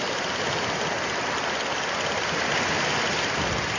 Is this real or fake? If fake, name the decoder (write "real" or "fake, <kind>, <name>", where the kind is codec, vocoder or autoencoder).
real